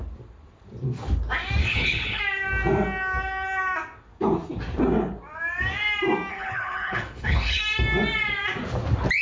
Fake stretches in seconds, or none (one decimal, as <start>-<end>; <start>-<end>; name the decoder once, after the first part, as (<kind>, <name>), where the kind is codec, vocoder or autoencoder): 1.6-2.2 (codec, HILCodec); 6.3-7.6